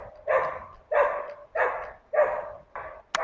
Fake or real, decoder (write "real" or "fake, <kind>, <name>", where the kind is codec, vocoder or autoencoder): real